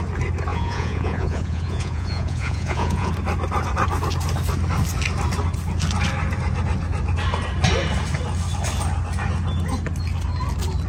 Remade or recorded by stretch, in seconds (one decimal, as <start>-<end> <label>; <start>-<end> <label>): 0.0-0.5 recorded; 0.5-3.1 remade; 3.1-10.9 recorded